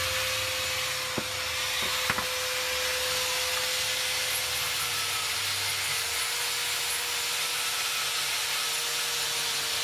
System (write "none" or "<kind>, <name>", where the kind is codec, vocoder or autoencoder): none